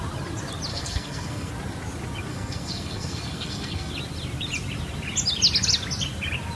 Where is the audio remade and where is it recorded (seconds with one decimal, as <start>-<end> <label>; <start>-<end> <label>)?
0.0-0.7 recorded; 0.7-1.5 remade; 1.5-2.3 recorded; 2.3-3.9 remade; 3.9-6.6 recorded